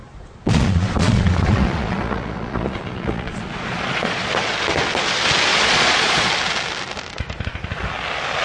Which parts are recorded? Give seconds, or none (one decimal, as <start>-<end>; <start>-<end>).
4.3-5.5; 6.3-8.4